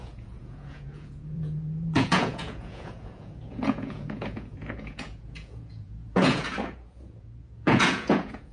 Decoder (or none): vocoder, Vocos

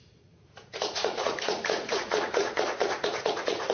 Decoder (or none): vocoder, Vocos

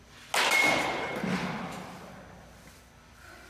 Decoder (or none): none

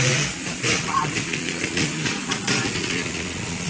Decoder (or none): vocoder, Vocos